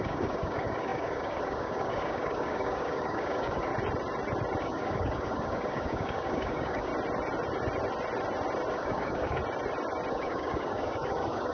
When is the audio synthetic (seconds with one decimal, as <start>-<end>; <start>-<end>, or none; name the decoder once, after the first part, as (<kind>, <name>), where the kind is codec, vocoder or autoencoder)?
0.0-3.7 (codec, DAC); 4.6-6.9; 8.7-9.4; 10.1-11.5